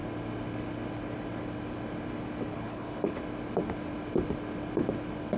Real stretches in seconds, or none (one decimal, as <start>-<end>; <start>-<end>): 0.0-2.5; 3.2-5.4